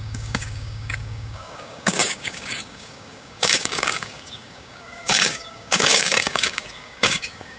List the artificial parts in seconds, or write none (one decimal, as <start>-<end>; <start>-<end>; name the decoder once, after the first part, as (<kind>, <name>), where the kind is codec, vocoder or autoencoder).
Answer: 0.0-7.6 (codec, DAC)